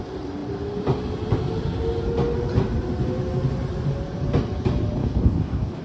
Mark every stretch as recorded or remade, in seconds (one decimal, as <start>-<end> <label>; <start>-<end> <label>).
0.0-5.0 recorded; 5.0-5.8 remade